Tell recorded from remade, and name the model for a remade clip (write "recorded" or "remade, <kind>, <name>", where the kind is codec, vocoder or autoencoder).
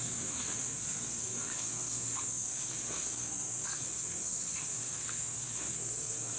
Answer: remade, codec, SNAC